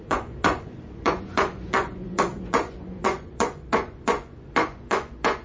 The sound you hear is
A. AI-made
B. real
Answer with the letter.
A